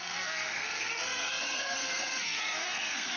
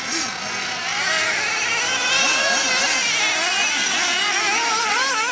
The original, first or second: second